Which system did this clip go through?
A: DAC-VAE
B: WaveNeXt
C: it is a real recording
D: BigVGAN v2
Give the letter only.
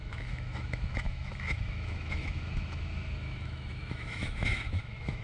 A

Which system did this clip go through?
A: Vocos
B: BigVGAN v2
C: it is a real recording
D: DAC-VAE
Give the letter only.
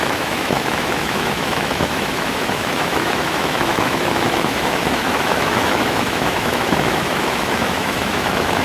D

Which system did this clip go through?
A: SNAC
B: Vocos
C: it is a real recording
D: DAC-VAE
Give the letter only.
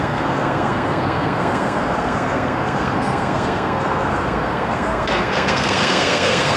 A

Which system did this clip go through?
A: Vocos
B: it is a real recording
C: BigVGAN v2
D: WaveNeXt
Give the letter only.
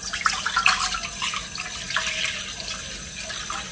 B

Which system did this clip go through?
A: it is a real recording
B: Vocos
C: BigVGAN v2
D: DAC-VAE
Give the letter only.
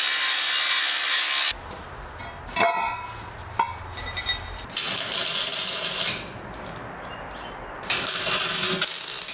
A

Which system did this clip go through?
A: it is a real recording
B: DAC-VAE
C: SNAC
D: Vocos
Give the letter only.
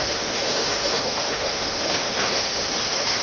B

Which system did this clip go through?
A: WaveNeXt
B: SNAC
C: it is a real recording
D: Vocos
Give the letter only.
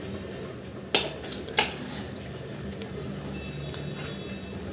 C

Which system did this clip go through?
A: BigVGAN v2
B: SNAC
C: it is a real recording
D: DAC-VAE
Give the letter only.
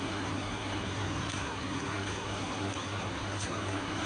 B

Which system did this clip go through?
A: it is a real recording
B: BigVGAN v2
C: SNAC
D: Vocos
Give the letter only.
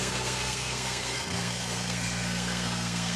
C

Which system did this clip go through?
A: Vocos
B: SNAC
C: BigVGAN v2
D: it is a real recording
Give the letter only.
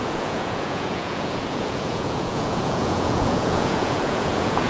A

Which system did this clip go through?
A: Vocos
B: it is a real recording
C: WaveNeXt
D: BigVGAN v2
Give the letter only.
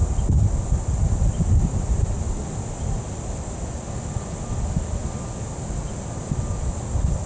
B